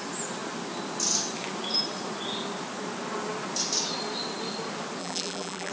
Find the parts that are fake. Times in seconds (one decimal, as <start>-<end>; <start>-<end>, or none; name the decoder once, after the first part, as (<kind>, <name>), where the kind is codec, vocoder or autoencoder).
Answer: 5.0-5.7 (vocoder, BigVGAN v2)

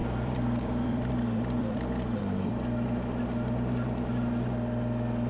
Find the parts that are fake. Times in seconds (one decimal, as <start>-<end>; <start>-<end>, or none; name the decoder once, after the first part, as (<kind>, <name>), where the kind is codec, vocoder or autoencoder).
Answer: 0.0-1.1 (vocoder, BigVGAN v2); 1.6-2.2

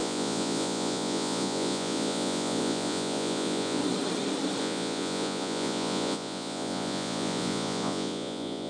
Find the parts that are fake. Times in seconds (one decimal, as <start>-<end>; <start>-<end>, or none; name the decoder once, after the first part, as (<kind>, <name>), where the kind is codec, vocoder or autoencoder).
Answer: 0.0-3.8 (vocoder, Vocos); 4.6-8.7